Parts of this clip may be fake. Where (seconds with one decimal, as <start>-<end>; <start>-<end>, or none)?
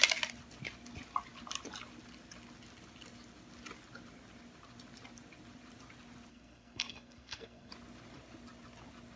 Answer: 6.3-7.7